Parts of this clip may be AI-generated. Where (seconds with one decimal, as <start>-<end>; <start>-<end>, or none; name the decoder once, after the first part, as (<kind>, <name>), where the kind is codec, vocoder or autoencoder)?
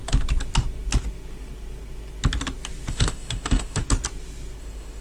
2.9-3.8 (autoencoder, DAC-VAE); 4.6-5.0